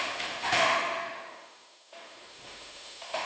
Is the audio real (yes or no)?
no